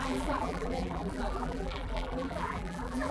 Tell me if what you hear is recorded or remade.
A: remade